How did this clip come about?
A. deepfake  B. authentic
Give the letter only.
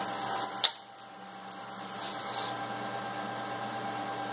B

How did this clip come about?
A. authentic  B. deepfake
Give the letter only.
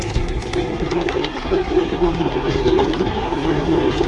B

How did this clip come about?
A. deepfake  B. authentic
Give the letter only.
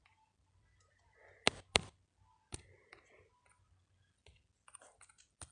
B